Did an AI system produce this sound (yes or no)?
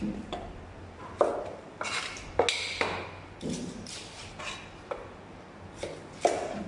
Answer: no